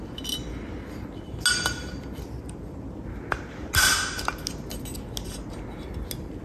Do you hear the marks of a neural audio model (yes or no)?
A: no